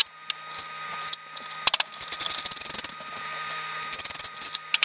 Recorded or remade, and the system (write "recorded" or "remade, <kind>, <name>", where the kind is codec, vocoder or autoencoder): recorded